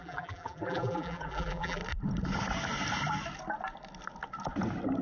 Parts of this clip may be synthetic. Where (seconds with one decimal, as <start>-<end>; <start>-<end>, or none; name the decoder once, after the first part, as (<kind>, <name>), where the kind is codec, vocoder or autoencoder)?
0.0-1.8 (vocoder, BigVGAN v2)